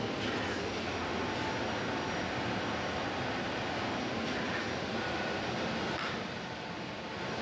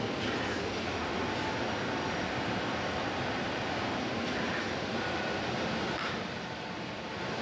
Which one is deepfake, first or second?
second